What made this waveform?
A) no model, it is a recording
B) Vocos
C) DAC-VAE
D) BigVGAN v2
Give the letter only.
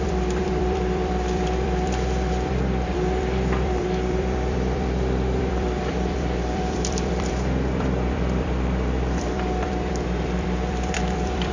D